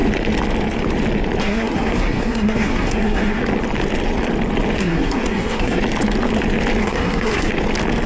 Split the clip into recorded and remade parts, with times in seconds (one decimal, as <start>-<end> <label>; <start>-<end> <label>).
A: 0.0-1.4 recorded; 1.4-3.4 remade; 3.4-4.8 recorded; 4.8-5.8 remade; 5.8-6.8 recorded; 6.8-7.5 remade; 7.5-8.1 recorded